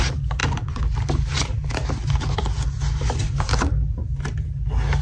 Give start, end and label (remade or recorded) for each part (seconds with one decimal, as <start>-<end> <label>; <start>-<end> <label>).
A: 0.0-5.0 recorded

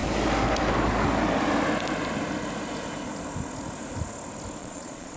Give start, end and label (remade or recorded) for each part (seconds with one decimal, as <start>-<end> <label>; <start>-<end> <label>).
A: 0.0-4.6 recorded; 4.6-5.2 remade

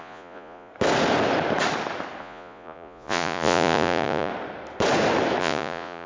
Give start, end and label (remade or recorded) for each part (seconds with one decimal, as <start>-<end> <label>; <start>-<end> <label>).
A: 0.0-0.7 remade; 0.7-2.2 recorded; 2.2-4.3 remade; 4.3-5.4 recorded; 5.4-6.1 remade

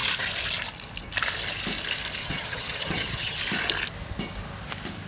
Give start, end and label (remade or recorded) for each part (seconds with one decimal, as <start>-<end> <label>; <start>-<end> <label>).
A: 0.0-2.2 recorded; 2.2-3.4 remade; 3.4-5.1 recorded

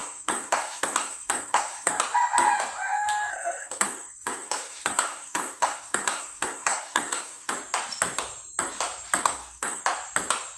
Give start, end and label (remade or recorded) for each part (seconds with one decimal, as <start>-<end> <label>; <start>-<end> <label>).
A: 0.0-1.9 remade; 1.9-3.3 recorded; 3.3-7.5 remade; 7.5-9.2 recorded; 9.2-9.8 remade; 9.8-10.6 recorded